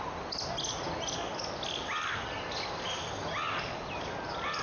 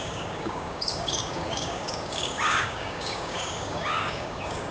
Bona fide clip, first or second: first